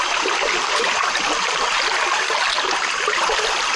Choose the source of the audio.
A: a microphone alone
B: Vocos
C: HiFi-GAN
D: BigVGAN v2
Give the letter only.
A